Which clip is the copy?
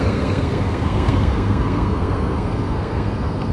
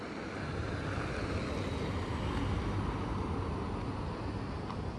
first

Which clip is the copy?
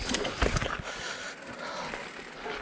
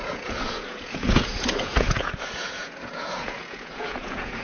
second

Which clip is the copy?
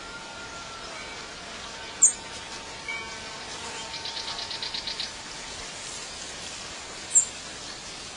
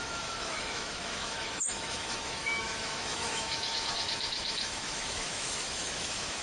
second